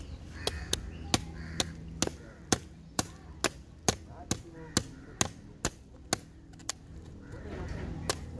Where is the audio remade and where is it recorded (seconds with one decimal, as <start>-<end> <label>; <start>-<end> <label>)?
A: 0.0-2.1 recorded; 2.1-3.1 remade; 3.1-8.4 recorded